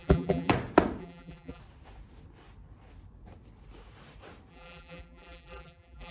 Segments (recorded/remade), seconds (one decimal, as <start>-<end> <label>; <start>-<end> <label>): 0.0-0.5 remade; 0.5-1.0 recorded; 1.0-1.6 remade; 1.6-4.5 recorded; 4.5-6.1 remade